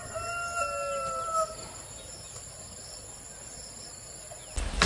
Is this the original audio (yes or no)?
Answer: yes